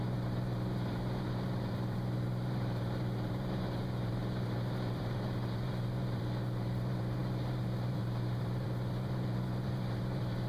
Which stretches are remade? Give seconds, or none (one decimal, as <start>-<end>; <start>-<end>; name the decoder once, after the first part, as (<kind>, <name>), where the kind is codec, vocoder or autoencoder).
0.0-10.5 (vocoder, BigVGAN v2)